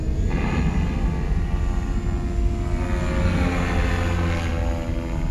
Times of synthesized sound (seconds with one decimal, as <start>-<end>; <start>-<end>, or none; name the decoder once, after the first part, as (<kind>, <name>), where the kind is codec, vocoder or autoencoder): none

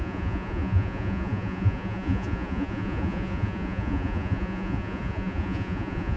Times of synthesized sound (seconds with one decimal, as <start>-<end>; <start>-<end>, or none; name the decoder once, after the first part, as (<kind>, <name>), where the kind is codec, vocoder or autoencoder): 0.0-6.2 (vocoder, Vocos)

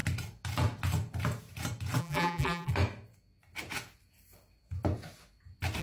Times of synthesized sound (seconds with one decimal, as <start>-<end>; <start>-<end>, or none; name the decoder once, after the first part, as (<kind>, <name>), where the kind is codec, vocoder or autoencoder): 2.0-2.7 (vocoder, BigVGAN v2)

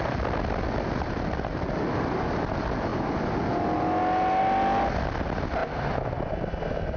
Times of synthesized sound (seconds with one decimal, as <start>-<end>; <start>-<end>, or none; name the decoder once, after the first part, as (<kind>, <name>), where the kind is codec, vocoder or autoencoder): none

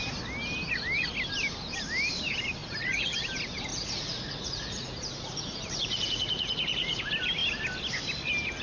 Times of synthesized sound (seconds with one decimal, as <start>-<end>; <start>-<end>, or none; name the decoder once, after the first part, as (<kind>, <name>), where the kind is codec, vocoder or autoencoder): 2.6-3.2 (vocoder, Vocos); 3.7-7.0